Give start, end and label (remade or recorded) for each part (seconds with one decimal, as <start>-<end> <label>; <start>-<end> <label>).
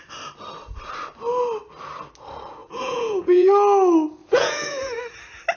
0.0-2.6 recorded; 2.6-3.5 remade; 3.5-4.2 recorded; 4.2-5.0 remade; 5.0-5.6 recorded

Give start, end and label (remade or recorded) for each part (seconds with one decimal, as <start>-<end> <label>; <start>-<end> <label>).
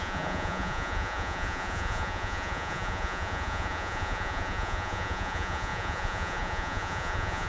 0.0-7.5 remade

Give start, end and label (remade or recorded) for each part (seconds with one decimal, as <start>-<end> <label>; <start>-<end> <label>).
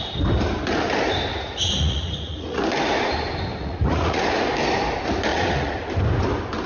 0.0-1.3 recorded; 1.3-2.6 remade; 2.6-3.6 recorded; 3.6-4.2 remade; 4.2-5.3 recorded; 5.3-5.9 remade; 5.9-6.7 recorded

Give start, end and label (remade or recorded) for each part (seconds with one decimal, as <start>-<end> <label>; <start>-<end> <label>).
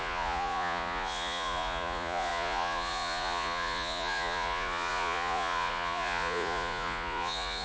0.0-7.6 remade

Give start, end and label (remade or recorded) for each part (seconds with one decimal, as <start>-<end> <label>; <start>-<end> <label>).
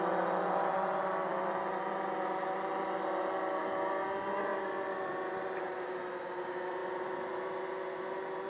0.0-8.5 recorded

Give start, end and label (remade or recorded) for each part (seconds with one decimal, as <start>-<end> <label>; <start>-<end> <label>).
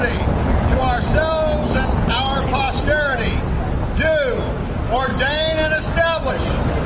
0.0-6.9 recorded